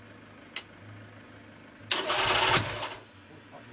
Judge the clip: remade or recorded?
recorded